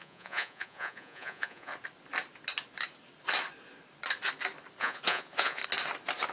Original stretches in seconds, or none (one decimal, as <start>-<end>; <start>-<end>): 1.7-4.8; 5.6-6.3

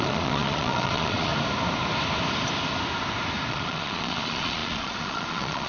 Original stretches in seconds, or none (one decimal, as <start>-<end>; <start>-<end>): 1.3-3.5

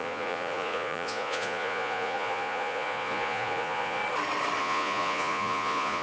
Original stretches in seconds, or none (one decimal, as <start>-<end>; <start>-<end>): 4.0-4.6

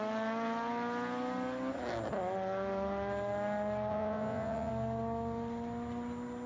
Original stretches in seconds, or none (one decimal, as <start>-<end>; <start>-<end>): 0.0-3.9; 4.7-6.5

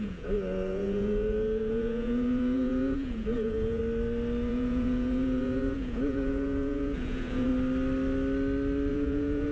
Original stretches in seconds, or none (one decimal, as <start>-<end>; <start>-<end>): 3.8-4.5; 7.5-8.9

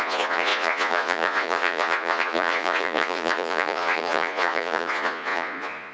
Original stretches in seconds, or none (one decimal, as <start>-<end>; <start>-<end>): none

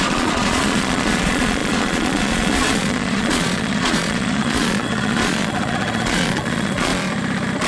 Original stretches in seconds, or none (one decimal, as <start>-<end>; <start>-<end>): 6.9-7.7